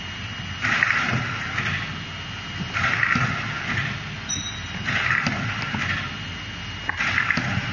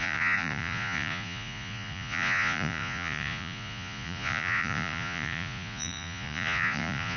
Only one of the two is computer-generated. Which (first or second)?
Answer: second